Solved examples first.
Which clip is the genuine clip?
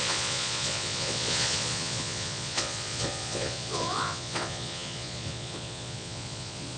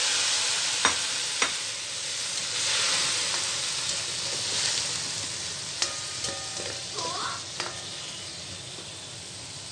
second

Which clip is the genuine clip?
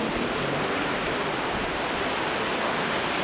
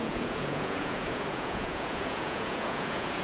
first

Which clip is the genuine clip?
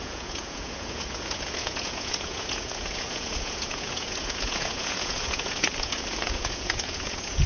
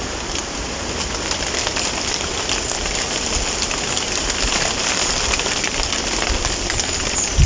second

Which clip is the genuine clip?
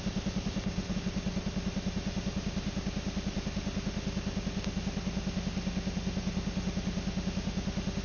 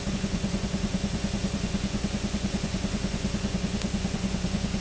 first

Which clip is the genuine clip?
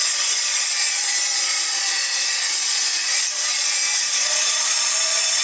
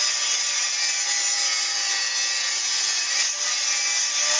second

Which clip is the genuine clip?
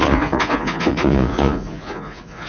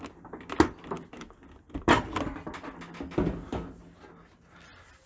second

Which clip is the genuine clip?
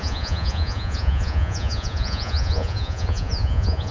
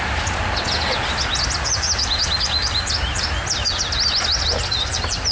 second